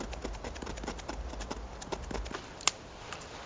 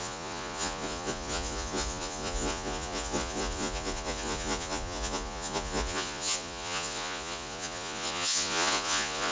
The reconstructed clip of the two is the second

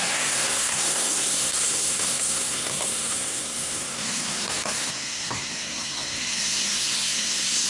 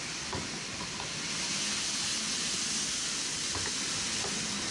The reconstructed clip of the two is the first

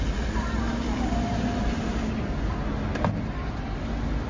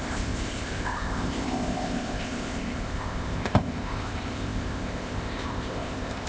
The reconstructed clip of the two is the second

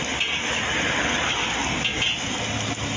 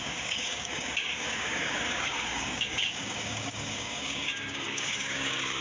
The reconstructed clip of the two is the second